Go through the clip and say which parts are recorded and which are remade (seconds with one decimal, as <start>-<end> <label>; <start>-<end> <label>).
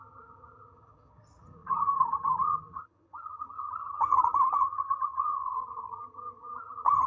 0.0-7.1 remade